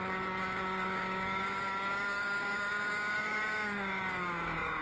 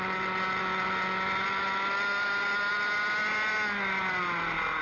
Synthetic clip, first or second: first